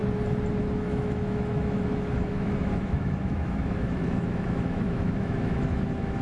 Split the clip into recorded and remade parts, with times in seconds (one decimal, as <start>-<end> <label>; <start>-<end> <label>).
0.0-0.6 recorded; 0.6-6.2 remade